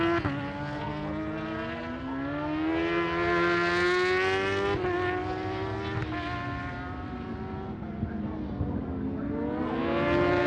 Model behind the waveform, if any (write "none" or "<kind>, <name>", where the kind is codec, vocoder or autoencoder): none